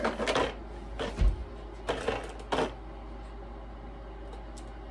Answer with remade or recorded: recorded